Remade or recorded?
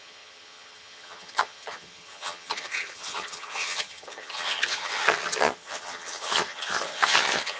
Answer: remade